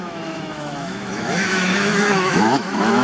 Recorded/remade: remade